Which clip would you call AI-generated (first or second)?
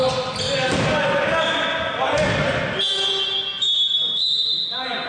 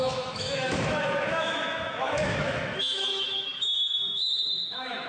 second